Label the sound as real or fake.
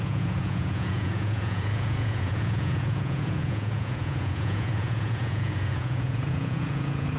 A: fake